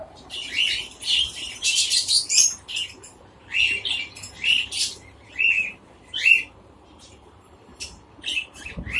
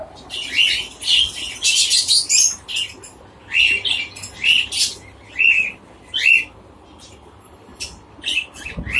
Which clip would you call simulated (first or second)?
first